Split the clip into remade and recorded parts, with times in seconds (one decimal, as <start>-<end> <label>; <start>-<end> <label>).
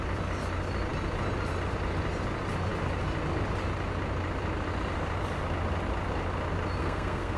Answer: 0.0-6.8 recorded; 6.8-7.4 remade